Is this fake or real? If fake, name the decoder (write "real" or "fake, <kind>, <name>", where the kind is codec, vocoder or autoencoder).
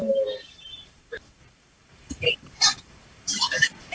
fake, vocoder, BigVGAN v2